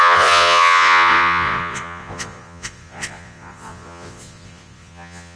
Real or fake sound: fake